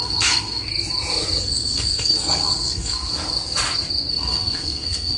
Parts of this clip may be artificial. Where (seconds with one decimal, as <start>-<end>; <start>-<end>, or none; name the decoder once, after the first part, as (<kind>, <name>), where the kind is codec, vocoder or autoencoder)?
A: 0.0-0.7 (codec, SNAC); 1.4-3.1; 4.1-5.2